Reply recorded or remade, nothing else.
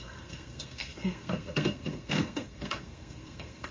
remade